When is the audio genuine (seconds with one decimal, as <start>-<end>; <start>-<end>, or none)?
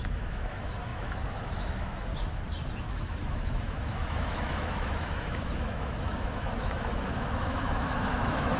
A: 2.1-2.8